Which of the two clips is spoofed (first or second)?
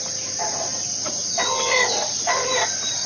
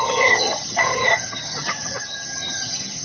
second